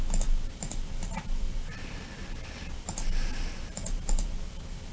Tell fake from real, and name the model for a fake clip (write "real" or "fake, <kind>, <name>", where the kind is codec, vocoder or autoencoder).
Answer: real